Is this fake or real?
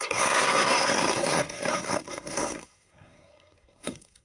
fake